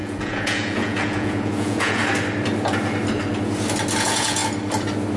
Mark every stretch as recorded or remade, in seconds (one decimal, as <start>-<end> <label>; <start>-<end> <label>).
0.0-2.0 remade; 2.0-4.0 recorded; 4.0-4.4 remade; 4.4-5.2 recorded